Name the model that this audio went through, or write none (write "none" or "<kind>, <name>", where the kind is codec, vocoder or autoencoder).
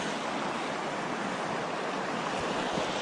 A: none